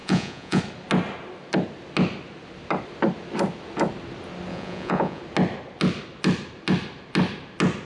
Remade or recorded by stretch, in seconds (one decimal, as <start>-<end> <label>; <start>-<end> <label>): 0.0-0.6 remade; 0.6-4.5 recorded; 4.5-5.2 remade; 5.2-7.9 recorded